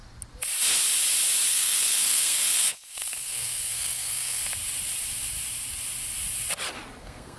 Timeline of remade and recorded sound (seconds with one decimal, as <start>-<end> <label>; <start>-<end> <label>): 0.0-1.5 recorded; 1.5-4.4 remade; 4.4-7.0 recorded; 7.0-7.4 remade